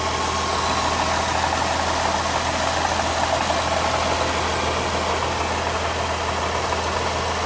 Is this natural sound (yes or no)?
yes